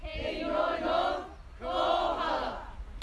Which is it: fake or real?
real